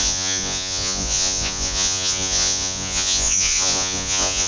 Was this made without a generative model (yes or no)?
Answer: no